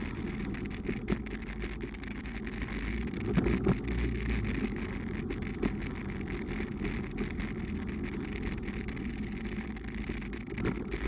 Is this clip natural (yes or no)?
yes